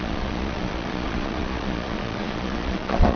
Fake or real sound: fake